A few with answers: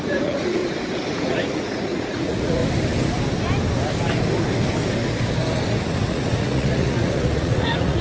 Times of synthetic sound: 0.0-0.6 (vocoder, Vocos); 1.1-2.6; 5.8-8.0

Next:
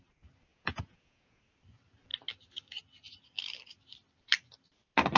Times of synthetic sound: 0.5-1.4 (vocoder, Vocos)

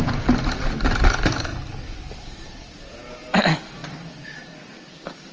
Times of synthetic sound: none